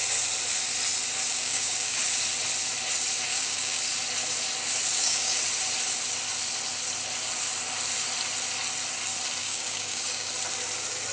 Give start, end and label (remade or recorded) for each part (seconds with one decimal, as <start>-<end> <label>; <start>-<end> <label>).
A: 0.0-1.3 recorded; 1.3-2.0 remade; 2.0-3.3 recorded; 3.3-3.8 remade; 3.8-4.9 recorded; 4.9-5.4 remade; 5.4-9.4 recorded; 9.4-10.3 remade; 10.3-11.1 recorded